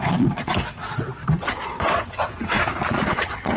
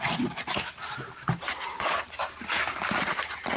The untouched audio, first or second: second